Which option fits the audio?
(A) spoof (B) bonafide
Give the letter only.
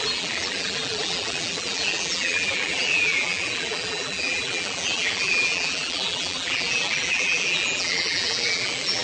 A